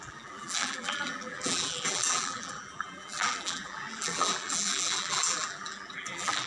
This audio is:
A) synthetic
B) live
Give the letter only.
A